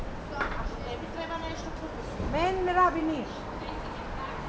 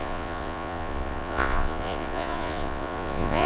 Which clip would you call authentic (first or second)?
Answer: first